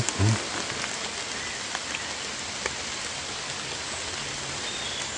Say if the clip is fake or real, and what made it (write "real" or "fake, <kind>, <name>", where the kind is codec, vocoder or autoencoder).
real